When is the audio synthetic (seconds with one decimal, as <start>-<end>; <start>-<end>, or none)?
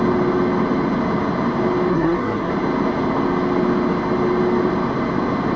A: 1.9-2.5